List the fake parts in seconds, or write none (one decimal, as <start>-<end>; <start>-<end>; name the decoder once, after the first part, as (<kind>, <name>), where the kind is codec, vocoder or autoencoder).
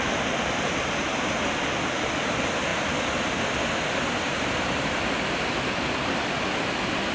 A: none